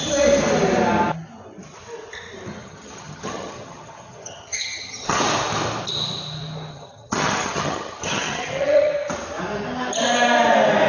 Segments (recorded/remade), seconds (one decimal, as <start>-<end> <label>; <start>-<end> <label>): 0.0-2.6 recorded; 2.6-5.2 remade; 5.2-6.7 recorded; 6.7-8.9 remade; 8.9-10.9 recorded